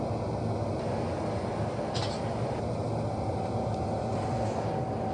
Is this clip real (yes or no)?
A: yes